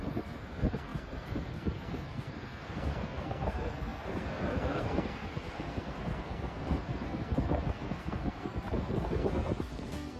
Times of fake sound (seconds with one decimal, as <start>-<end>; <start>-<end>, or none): 0.0-10.2